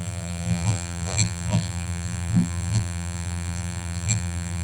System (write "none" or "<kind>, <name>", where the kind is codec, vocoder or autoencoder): vocoder, BigVGAN v2